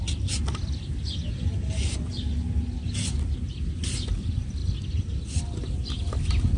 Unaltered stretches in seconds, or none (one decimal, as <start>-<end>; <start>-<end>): 0.0-6.6